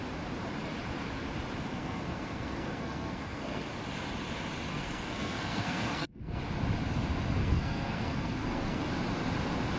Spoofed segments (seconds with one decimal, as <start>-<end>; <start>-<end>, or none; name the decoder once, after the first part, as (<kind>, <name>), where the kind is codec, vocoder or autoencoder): 1.7-3.7 (codec, SNAC); 4.7-6.4; 7.4-8.9